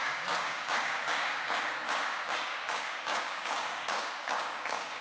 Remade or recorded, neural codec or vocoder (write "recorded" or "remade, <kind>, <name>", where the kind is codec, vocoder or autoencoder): remade, codec, DAC